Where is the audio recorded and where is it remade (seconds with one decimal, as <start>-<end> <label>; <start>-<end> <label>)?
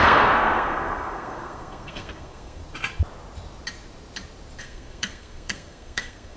0.0-2.6 remade; 2.6-4.6 recorded; 4.6-6.4 remade